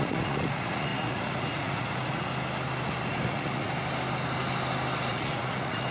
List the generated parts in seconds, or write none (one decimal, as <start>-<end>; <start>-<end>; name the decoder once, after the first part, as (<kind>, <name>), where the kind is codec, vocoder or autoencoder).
0.0-2.3 (vocoder, Vocos); 3.0-3.7; 5.1-5.9